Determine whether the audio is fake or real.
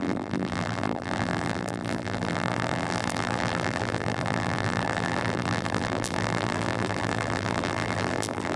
fake